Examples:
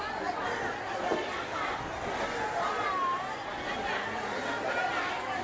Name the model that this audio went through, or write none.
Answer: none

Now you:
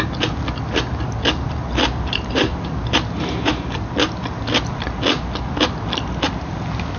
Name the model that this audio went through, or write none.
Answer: none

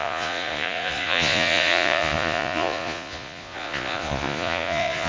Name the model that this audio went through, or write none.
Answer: vocoder, Vocos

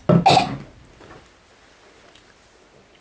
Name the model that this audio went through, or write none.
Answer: none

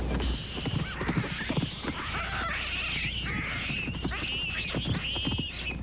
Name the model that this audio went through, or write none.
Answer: none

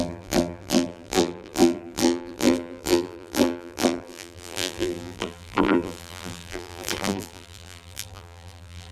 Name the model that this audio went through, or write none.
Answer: vocoder, BigVGAN v2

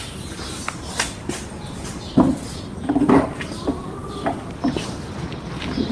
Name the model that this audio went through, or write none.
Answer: none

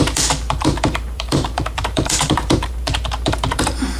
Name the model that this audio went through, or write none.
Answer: vocoder, BigVGAN v2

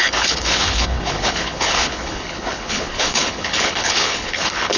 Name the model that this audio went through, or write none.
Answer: codec, HILCodec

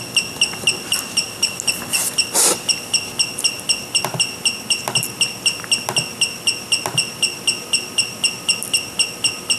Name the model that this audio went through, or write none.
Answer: none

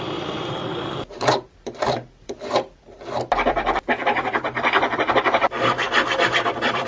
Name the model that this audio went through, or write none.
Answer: vocoder, BigVGAN v2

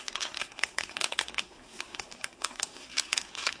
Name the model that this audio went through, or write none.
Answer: codec, SNAC